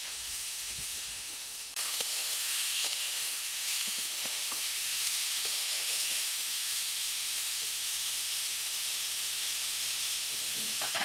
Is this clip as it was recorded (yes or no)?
no